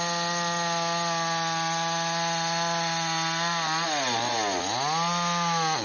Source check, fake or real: real